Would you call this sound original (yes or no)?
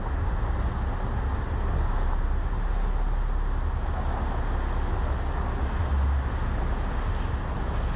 yes